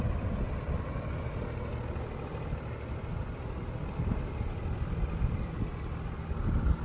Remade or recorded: recorded